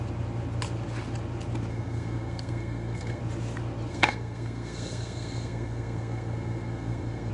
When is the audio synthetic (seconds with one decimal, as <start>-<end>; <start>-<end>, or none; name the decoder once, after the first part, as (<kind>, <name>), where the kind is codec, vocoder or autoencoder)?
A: 1.7-3.2 (codec, SNAC); 3.9-7.3